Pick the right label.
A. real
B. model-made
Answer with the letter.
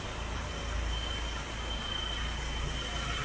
A